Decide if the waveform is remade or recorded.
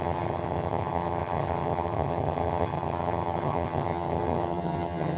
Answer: remade